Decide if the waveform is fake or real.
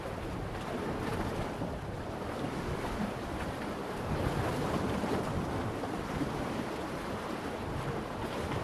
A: real